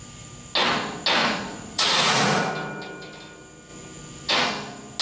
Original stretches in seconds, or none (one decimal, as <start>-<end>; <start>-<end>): 0.0-1.2; 2.5-5.0